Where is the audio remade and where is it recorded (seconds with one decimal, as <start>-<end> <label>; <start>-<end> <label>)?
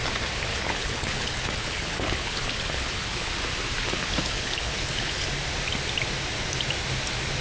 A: 0.0-0.5 recorded; 0.5-3.3 remade; 3.3-3.8 recorded; 3.8-5.3 remade; 5.3-7.4 recorded